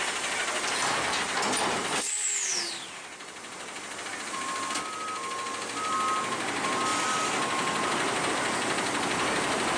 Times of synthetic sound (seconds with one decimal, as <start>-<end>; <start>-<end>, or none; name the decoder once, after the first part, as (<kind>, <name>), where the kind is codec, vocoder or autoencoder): none